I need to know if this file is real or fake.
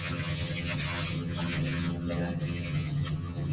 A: fake